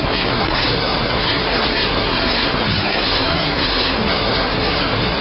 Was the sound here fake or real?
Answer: fake